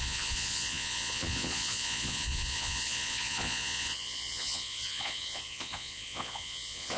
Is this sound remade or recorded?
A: remade